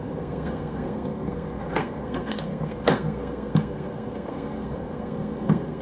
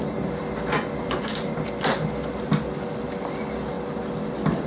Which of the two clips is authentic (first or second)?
second